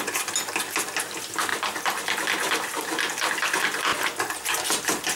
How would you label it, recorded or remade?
recorded